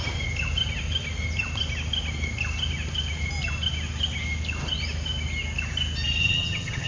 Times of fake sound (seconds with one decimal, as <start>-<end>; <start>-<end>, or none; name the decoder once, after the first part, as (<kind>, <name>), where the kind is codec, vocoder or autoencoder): 6.2-6.9 (vocoder, HiFi-GAN)